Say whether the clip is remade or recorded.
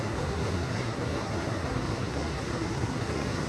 remade